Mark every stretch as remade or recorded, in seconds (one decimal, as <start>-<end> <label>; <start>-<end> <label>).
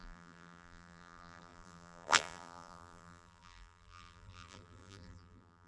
0.0-5.7 remade